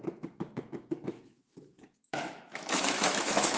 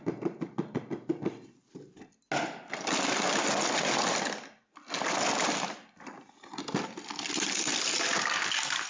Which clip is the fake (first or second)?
first